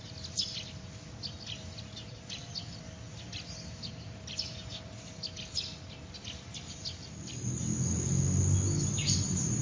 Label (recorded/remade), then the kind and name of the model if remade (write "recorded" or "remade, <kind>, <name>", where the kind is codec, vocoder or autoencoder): recorded